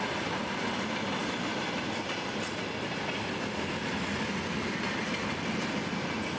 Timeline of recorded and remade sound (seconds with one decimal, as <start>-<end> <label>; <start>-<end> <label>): 0.0-6.4 recorded